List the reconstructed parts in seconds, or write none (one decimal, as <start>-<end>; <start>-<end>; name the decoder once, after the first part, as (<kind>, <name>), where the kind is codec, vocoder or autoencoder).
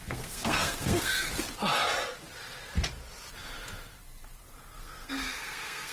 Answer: 0.0-1.3 (codec, SNAC); 4.8-5.9